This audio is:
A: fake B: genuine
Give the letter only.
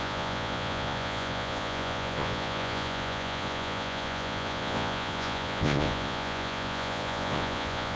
A